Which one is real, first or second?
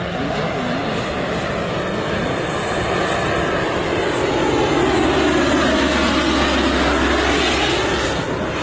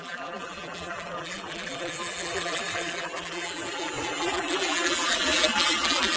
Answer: first